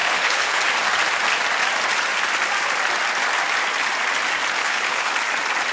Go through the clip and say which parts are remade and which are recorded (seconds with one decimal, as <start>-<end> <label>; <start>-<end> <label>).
0.0-0.6 remade; 0.6-4.6 recorded; 4.6-5.1 remade; 5.1-5.7 recorded